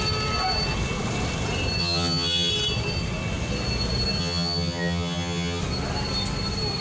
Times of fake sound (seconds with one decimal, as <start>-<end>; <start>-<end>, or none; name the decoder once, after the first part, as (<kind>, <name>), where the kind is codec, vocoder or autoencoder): 1.8-2.5 (vocoder, HiFi-GAN); 4.2-5.6